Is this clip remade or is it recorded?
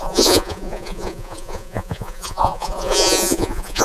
remade